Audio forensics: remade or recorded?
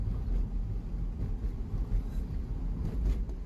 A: recorded